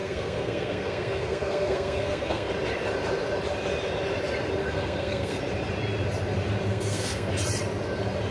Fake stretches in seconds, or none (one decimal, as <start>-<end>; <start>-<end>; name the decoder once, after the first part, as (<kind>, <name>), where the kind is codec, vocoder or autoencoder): 0.0-2.5 (codec, SNAC); 4.6-5.4; 6.7-7.3